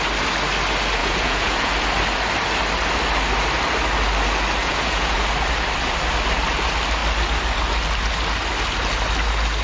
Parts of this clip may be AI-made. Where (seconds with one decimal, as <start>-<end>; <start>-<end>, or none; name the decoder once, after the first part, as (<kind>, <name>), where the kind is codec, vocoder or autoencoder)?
1.0-1.7 (vocoder, Vocos); 4.6-5.2